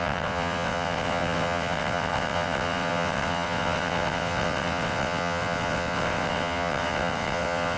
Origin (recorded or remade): remade